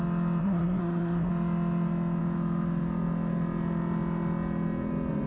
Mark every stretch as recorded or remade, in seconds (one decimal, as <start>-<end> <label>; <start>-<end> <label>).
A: 0.0-0.4 recorded; 0.4-1.3 remade; 1.3-5.3 recorded